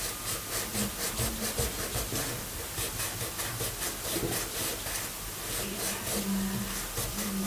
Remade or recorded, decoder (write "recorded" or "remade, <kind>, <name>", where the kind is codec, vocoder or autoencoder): remade, vocoder, BigVGAN v2